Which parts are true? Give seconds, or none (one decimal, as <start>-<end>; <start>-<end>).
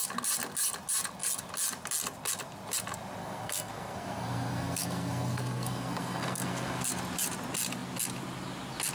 0.0-3.2; 6.9-8.9